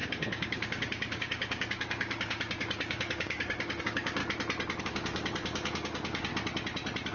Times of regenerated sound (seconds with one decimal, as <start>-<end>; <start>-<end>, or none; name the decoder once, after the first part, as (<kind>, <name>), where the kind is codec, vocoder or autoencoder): 0.0-4.2 (codec, DAC); 4.8-6.3